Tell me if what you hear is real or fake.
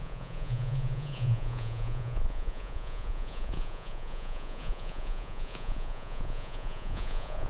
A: fake